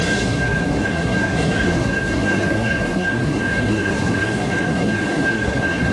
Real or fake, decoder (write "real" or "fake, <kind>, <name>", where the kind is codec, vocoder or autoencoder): fake, codec, SNAC